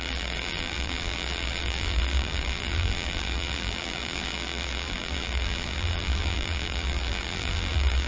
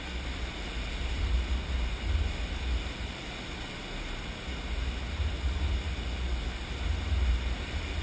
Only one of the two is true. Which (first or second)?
second